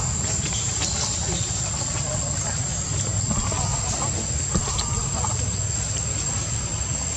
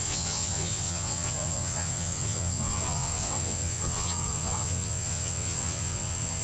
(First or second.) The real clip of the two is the first